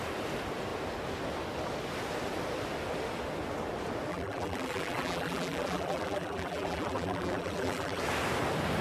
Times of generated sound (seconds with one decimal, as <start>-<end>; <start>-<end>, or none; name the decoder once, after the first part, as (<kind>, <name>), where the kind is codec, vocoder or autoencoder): 4.1-8.0 (vocoder, BigVGAN v2)